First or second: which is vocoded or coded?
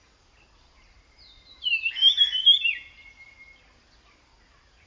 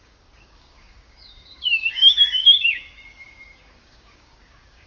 second